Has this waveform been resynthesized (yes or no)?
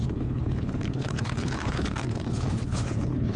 yes